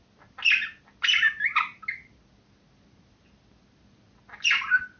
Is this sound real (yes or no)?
yes